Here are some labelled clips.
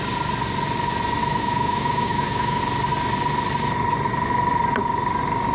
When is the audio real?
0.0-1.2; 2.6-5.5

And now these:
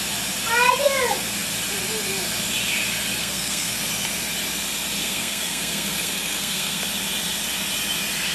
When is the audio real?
0.0-3.2; 3.8-5.0; 6.8-8.3

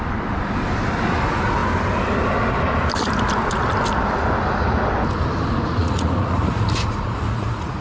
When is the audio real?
0.0-5.8